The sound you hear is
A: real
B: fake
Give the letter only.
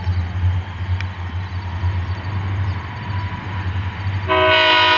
A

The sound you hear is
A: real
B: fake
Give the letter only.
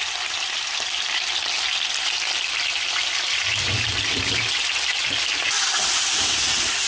A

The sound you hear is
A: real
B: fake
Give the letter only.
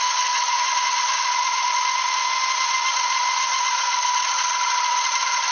A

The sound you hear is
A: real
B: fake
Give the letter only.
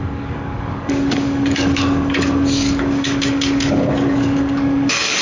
B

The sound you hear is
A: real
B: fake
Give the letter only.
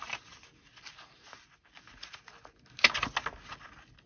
A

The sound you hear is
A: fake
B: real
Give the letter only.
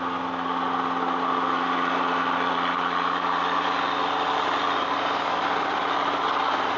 B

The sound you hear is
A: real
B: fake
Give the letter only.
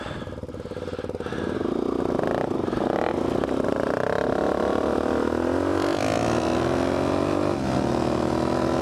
A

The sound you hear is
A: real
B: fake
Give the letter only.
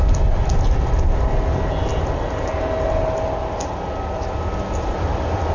A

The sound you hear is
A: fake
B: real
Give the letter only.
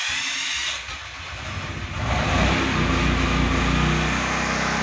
B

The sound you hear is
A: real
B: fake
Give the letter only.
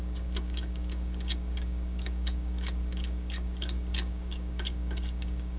B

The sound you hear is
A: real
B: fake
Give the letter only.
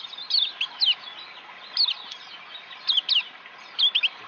A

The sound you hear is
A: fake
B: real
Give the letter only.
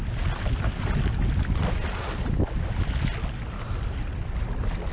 B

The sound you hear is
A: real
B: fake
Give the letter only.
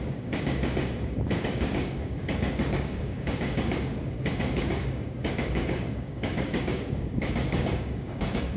B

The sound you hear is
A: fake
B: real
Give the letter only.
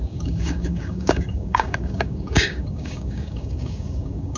A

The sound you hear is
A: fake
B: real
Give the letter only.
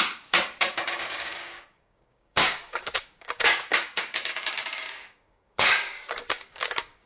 A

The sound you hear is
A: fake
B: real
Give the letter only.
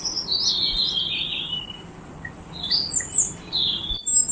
B